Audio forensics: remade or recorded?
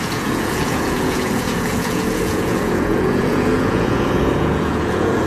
remade